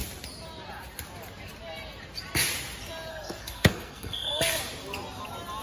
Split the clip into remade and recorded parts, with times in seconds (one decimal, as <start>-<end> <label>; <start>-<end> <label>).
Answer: 0.0-3.1 recorded; 3.1-4.6 remade; 4.6-5.6 recorded